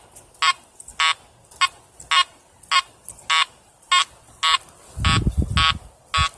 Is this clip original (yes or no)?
yes